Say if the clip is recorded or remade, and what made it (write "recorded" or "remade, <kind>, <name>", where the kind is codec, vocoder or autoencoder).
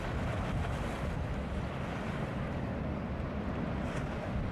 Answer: recorded